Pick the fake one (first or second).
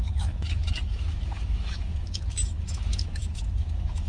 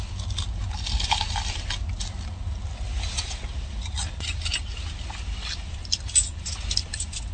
first